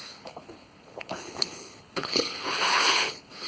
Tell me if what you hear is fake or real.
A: fake